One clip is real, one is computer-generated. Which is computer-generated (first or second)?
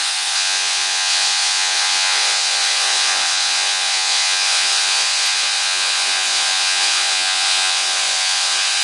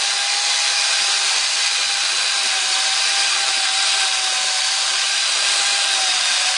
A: first